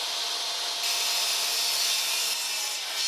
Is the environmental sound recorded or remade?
recorded